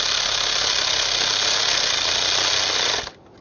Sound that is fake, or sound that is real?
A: real